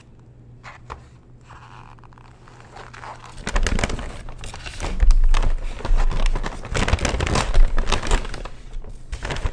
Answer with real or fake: real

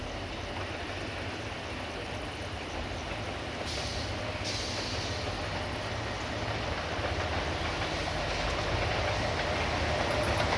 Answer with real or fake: real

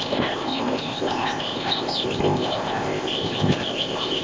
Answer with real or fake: fake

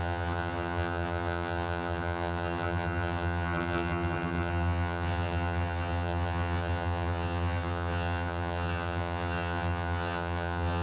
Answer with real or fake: fake